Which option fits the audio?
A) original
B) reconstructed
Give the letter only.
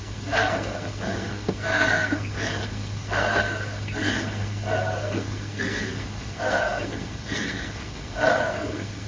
B